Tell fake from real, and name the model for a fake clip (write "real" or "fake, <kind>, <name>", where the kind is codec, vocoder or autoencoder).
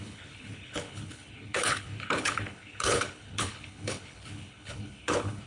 fake, codec, HILCodec